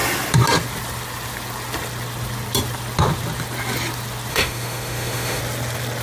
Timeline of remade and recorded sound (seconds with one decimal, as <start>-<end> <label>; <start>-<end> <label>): 0.0-4.3 recorded; 4.3-5.4 remade; 5.4-6.0 recorded